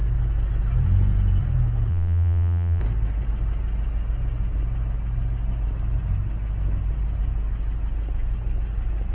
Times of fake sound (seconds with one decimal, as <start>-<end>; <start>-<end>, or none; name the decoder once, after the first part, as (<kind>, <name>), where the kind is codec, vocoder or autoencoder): 1.9-2.8 (vocoder, BigVGAN v2)